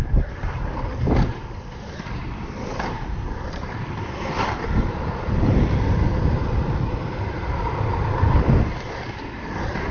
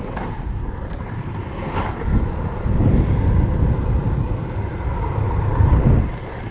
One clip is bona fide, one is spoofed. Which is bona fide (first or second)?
second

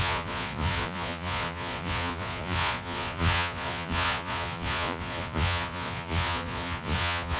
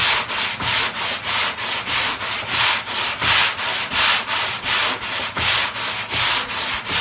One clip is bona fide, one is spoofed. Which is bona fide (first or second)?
second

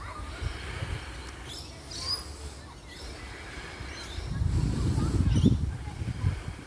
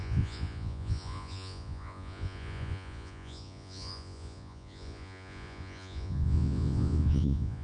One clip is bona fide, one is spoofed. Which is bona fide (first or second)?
first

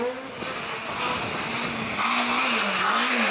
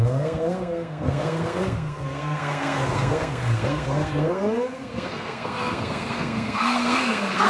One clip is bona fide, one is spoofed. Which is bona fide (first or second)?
first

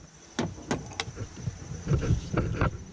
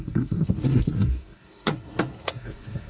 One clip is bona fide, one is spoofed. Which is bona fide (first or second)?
first